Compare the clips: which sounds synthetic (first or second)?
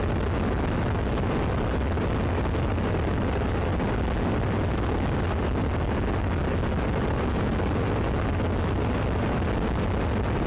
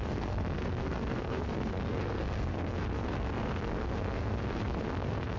second